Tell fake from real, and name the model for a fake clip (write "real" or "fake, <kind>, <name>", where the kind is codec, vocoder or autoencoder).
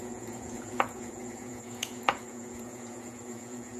fake, vocoder, Vocos